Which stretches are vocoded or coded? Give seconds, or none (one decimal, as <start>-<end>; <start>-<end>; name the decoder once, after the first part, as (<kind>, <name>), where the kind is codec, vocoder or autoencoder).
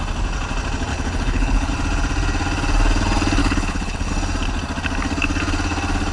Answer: 0.9-1.7 (codec, HILCodec); 3.4-4.1